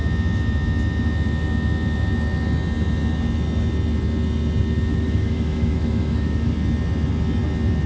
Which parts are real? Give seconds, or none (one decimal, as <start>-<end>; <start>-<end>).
0.0-4.9; 6.5-7.9